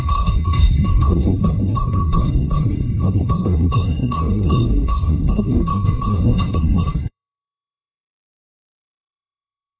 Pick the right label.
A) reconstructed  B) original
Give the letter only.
A